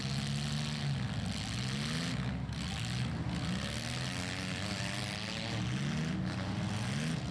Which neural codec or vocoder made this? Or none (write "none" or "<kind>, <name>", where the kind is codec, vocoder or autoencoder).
none